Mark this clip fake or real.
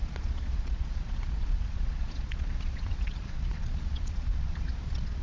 fake